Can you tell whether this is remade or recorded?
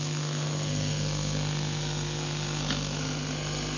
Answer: remade